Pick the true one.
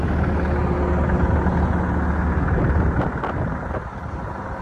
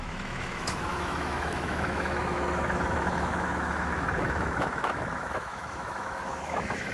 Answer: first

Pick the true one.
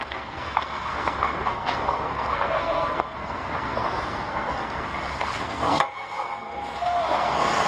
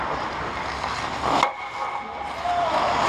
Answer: second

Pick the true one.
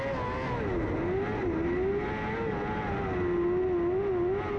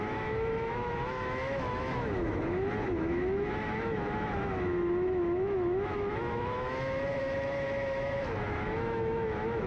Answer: first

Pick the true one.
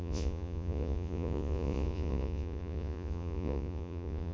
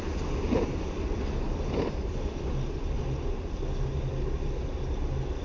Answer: second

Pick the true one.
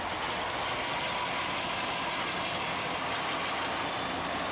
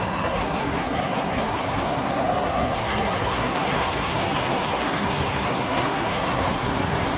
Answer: first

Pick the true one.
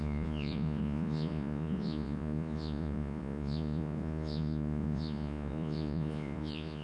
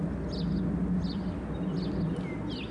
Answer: second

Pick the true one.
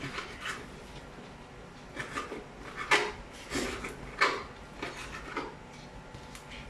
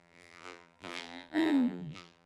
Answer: first